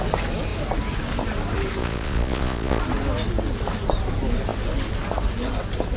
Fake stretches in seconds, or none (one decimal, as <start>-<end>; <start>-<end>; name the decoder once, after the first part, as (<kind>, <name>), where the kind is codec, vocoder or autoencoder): 1.8-2.8 (vocoder, Vocos)